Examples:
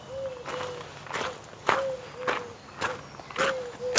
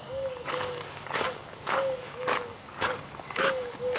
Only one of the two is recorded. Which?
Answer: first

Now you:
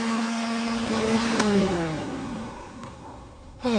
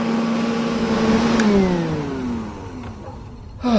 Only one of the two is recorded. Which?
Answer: second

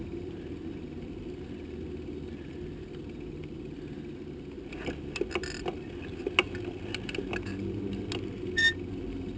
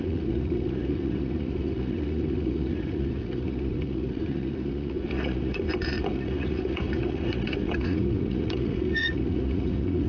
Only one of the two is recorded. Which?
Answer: first